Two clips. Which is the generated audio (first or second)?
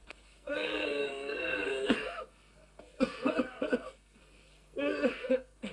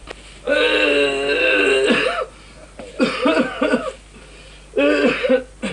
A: first